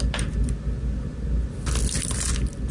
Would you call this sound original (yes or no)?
yes